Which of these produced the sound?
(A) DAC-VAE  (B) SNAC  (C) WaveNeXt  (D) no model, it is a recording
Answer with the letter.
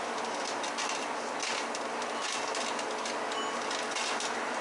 D